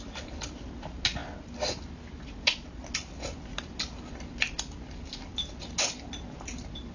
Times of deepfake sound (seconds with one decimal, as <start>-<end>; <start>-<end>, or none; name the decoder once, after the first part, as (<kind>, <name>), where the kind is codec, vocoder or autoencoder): none